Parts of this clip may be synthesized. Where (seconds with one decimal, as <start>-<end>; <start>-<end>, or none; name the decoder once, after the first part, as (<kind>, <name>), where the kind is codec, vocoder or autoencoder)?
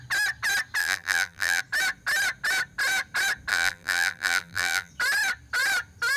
0.8-1.6 (vocoder, BigVGAN v2); 3.5-4.9